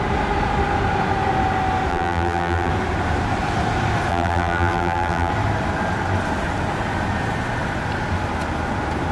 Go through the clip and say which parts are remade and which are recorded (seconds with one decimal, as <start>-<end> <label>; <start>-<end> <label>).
0.0-1.9 recorded; 1.9-2.7 remade; 2.7-4.1 recorded; 4.1-5.3 remade; 5.3-9.1 recorded

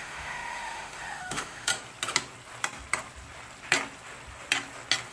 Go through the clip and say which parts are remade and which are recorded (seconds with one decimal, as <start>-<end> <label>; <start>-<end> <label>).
0.0-1.7 remade; 1.7-5.1 recorded

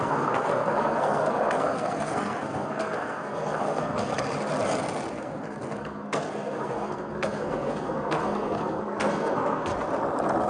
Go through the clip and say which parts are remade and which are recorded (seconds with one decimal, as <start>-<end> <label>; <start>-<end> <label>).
0.0-4.1 remade; 4.1-5.1 recorded; 5.1-9.7 remade; 9.7-10.5 recorded

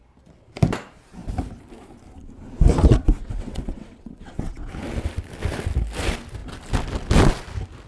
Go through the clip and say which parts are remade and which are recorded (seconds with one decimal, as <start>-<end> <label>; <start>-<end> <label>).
0.0-3.2 recorded; 3.2-4.7 remade; 4.7-7.9 recorded

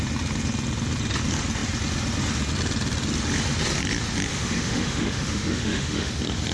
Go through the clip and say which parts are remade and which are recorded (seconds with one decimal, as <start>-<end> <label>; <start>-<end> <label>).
0.0-4.3 recorded; 4.3-6.1 remade; 6.1-6.5 recorded

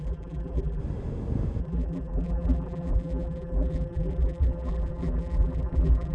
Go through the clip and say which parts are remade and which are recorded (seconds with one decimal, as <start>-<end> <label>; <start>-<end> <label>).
0.0-0.8 remade; 0.8-1.6 recorded; 1.6-6.1 remade

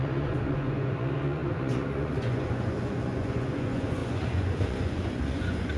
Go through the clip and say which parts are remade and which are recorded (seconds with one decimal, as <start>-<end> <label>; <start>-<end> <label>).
0.0-5.8 remade